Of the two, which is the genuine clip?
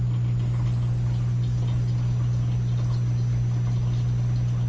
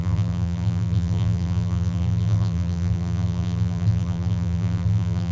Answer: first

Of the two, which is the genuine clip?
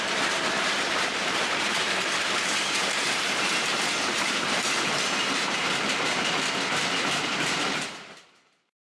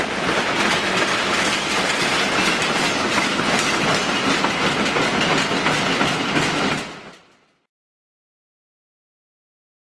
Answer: second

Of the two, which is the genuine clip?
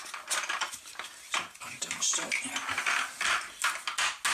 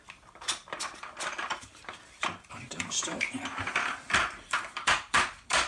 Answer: first